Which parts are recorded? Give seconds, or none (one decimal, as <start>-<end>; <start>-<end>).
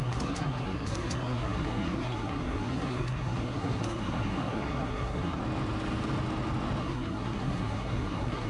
5.4-6.8